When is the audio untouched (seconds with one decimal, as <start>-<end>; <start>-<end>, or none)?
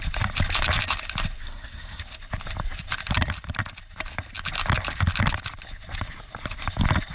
0.0-1.4; 2.0-7.1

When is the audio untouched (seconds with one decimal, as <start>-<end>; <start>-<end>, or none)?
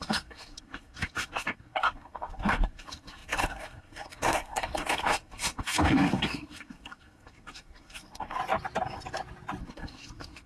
8.4-9.6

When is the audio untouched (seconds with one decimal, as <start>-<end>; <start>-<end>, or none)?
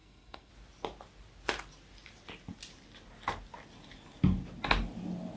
0.5-5.4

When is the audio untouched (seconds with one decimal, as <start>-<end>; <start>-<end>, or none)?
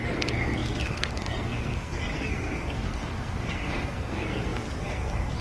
none